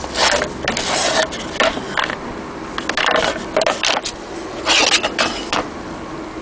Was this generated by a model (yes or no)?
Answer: no